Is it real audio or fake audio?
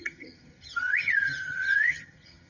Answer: fake